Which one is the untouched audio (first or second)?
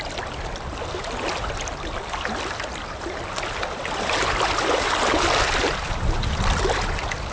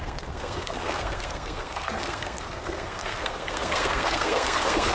first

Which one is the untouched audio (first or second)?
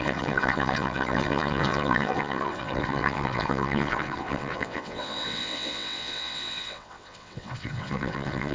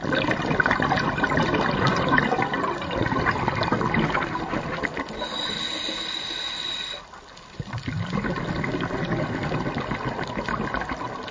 second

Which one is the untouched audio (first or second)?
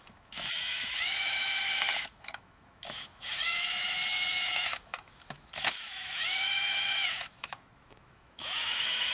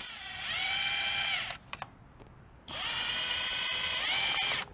second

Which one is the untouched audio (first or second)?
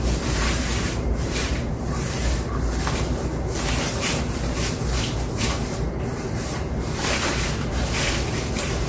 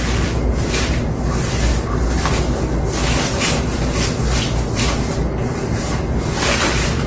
second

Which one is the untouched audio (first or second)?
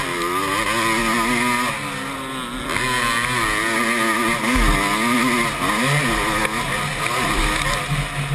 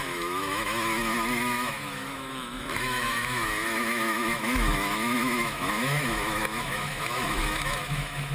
first